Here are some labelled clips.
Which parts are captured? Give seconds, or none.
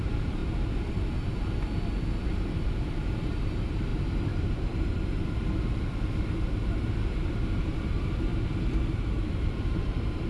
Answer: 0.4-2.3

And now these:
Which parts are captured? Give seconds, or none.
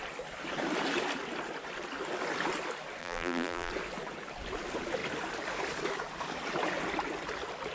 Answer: 0.0-3.0; 3.7-7.7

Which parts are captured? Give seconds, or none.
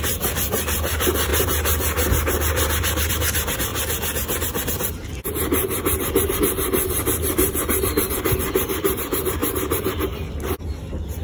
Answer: 3.7-6.4; 9.4-10.3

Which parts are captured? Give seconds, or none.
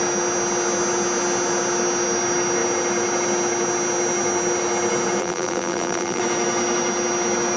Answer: 0.0-5.2; 6.2-7.6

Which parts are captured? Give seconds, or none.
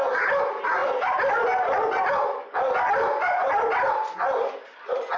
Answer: 0.0-0.8; 3.9-5.2